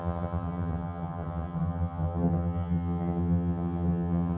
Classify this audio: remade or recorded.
remade